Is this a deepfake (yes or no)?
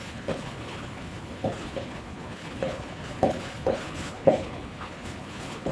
yes